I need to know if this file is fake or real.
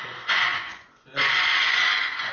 fake